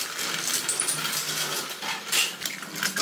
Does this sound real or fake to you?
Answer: real